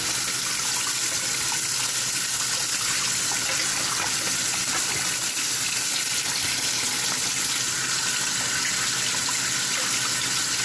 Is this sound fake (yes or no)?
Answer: no